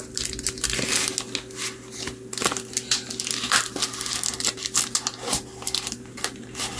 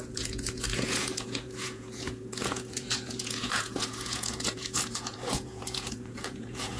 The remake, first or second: second